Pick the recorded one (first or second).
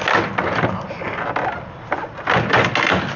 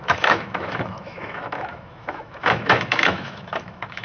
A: first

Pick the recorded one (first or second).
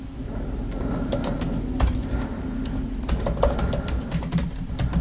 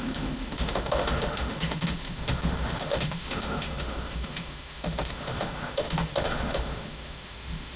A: first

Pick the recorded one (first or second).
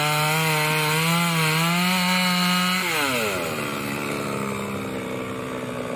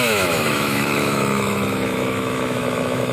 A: first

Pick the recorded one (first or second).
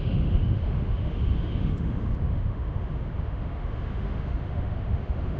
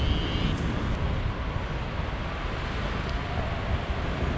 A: second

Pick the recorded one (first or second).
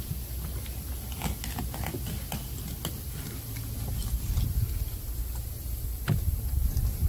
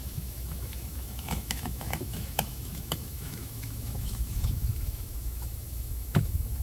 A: first